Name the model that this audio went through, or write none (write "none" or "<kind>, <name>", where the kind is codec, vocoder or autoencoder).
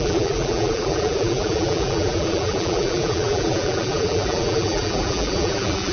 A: vocoder, BigVGAN v2